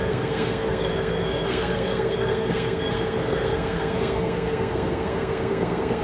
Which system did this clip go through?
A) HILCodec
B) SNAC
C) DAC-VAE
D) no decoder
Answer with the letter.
B